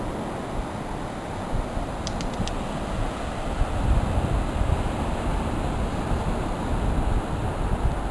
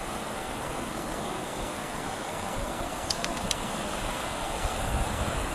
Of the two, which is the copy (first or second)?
second